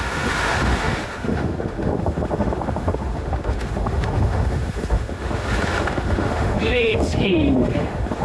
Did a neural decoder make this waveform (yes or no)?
yes